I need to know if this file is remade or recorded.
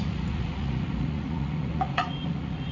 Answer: remade